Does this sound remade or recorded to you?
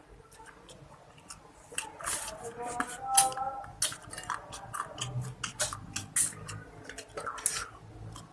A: recorded